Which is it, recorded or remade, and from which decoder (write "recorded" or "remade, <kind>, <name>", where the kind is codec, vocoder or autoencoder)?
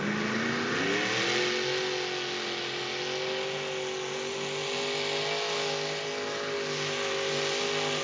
recorded